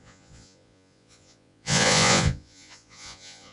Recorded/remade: remade